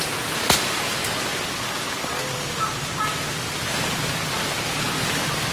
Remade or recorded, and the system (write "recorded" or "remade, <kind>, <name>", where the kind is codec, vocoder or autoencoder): recorded